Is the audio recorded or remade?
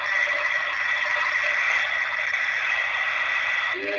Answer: recorded